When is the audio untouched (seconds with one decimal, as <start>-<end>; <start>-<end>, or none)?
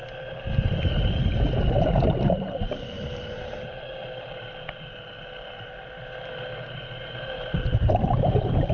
0.0-1.7; 3.9-6.6